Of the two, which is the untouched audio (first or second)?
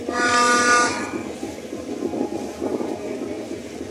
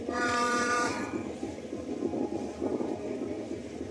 first